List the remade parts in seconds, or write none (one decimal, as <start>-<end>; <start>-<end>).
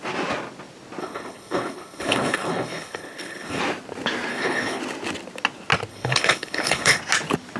1.0-3.6; 4.3-4.8; 5.9-7.0